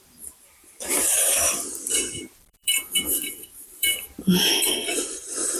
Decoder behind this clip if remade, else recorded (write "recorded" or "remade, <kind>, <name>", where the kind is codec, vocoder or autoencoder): remade, vocoder, BigVGAN v2